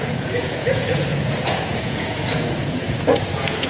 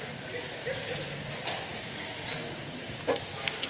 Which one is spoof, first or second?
first